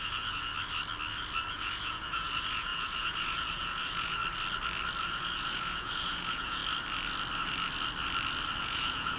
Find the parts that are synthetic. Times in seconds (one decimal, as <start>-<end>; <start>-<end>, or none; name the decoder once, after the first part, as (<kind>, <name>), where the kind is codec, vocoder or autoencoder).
0.0-0.5 (vocoder, Vocos); 1.5-4.2; 5.0-6.6; 8.6-9.2